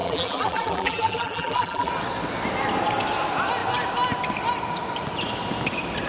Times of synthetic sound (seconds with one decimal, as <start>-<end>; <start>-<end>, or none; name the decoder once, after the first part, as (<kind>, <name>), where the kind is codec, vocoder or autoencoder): 0.0-1.9 (vocoder, BigVGAN v2)

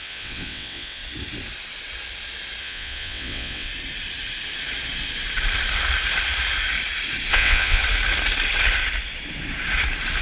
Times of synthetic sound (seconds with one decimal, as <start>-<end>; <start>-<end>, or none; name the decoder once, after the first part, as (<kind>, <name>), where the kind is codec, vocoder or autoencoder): 0.0-1.0 (vocoder, WaveNeXt); 2.6-3.7; 7.3-7.8

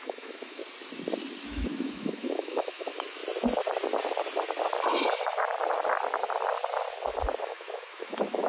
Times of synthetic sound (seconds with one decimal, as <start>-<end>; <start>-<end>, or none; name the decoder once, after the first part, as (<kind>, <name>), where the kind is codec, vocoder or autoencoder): 0.0-0.6 (autoencoder, DAC-VAE); 1.4-3.2; 7.4-8.5

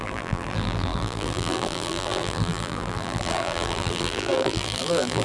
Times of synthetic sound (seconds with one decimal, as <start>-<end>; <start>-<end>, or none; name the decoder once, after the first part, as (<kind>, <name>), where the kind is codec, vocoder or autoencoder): 0.0-5.2 (vocoder, BigVGAN v2)

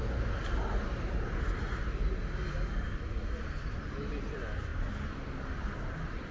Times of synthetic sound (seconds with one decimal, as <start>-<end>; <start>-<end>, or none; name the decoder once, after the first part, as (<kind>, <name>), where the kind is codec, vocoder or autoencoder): none